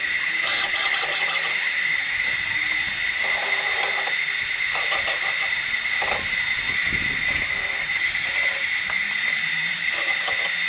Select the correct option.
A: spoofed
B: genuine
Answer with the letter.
B